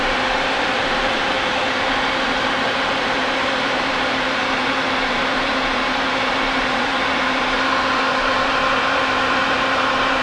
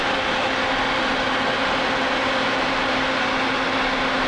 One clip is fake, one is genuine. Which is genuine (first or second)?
second